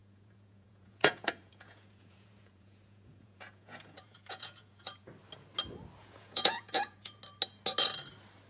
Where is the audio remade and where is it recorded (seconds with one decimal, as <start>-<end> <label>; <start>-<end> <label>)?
0.0-5.1 remade; 5.1-6.0 recorded; 6.0-7.2 remade; 7.2-8.5 recorded